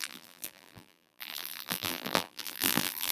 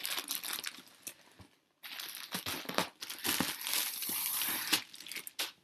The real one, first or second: second